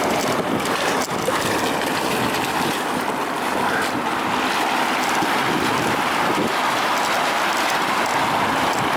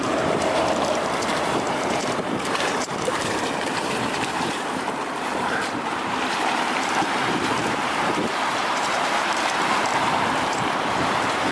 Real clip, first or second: first